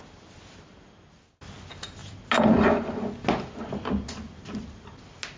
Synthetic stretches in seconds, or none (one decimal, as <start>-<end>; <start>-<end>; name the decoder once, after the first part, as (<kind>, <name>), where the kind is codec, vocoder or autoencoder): none